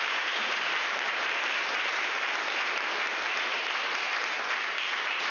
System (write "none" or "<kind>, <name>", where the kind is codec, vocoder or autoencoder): vocoder, BigVGAN v2